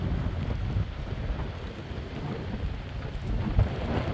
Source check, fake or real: real